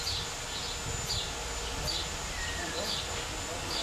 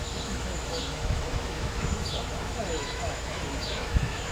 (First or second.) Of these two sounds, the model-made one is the second